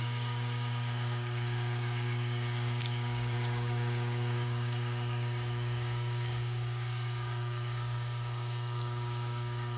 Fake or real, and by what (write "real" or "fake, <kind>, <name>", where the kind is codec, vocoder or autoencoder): fake, codec, DAC